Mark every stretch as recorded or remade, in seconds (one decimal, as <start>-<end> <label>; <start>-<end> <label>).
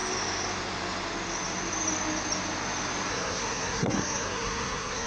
0.0-3.1 recorded; 3.1-5.1 remade